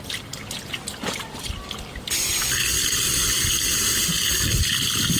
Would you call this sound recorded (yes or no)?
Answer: no